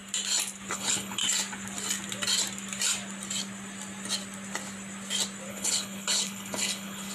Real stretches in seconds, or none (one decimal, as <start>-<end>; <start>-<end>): 0.0-0.7; 1.2-5.5